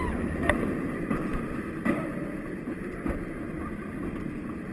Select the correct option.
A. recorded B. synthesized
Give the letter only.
B